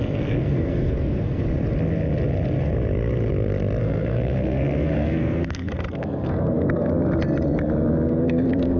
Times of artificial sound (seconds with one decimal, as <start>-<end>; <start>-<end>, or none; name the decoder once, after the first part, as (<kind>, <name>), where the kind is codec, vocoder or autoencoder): 0.0-1.4 (codec, SNAC); 3.8-6.9; 8.1-8.8